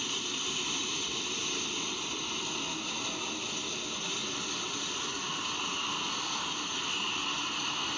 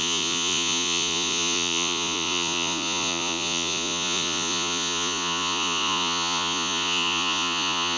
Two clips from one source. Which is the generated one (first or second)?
second